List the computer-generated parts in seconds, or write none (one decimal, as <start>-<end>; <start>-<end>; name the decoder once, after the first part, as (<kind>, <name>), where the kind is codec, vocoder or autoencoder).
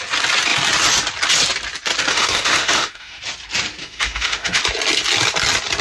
2.1-3.2 (autoencoder, DAC-VAE); 3.8-4.6